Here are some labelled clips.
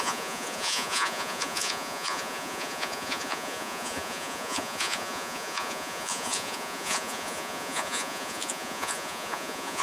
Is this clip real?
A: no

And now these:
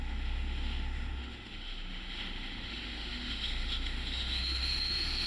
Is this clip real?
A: no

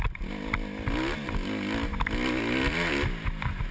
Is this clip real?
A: yes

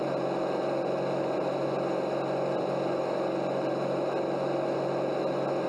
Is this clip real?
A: yes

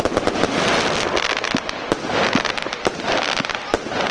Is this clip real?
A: yes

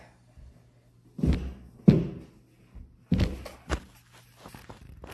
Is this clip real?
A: yes